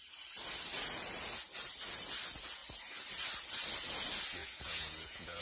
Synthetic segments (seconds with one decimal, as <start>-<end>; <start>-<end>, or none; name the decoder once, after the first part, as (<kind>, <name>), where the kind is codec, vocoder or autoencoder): 4.4-5.4 (vocoder, Vocos)